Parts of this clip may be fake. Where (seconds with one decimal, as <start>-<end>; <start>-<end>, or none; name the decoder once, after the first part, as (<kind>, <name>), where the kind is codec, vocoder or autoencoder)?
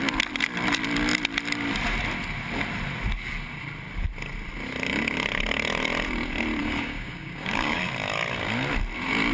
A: 6.6-7.8 (codec, DAC)